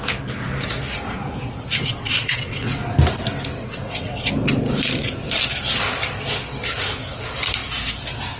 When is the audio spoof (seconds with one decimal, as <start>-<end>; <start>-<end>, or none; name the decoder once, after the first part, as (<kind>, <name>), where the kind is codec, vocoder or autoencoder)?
1.8-2.8 (vocoder, WaveNeXt); 3.6-4.3